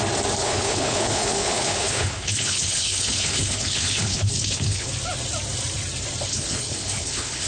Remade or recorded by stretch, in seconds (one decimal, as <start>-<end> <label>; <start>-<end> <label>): 0.0-0.4 recorded; 0.4-4.9 remade; 4.9-6.3 recorded; 6.3-7.5 remade